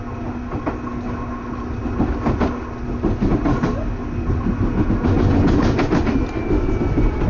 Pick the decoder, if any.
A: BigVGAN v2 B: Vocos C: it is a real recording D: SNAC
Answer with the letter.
C